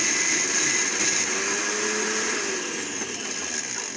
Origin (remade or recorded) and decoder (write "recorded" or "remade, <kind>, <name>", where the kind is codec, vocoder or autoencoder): recorded